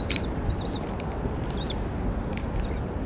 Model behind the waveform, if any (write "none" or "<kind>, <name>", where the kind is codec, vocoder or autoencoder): none